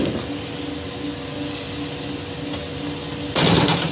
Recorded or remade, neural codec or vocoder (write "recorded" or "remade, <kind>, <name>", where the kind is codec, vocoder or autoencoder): recorded